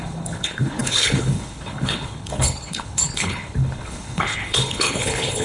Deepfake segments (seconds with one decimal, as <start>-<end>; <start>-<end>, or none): 0.0-5.4